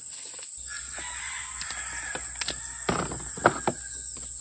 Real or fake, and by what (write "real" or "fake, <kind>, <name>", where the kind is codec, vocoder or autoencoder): real